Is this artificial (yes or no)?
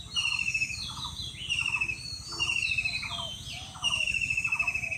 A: no